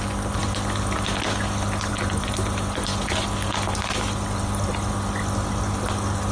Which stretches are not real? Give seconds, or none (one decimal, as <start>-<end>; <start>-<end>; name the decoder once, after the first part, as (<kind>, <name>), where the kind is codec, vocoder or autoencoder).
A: none